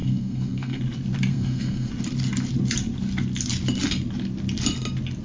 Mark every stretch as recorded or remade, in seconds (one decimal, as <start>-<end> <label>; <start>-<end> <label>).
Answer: 0.0-0.8 remade; 0.8-1.3 recorded; 1.3-1.9 remade; 1.9-5.2 recorded